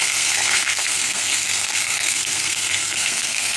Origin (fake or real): fake